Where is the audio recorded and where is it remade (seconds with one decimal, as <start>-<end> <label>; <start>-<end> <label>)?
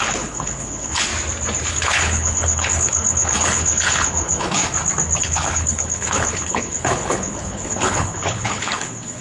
0.0-1.1 remade; 1.1-1.7 recorded; 1.7-4.6 remade; 4.6-5.2 recorded; 5.2-9.2 remade